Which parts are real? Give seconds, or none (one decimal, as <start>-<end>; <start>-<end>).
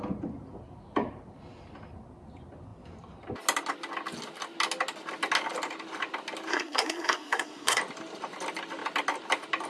0.0-6.5; 7.8-9.7